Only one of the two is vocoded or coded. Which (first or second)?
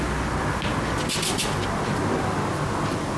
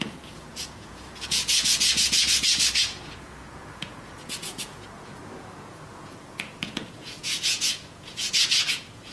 second